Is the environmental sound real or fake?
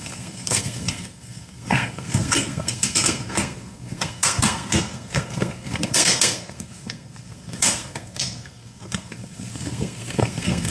fake